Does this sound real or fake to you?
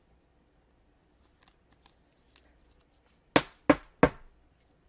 real